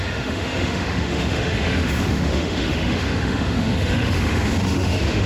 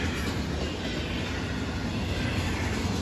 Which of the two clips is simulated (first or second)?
first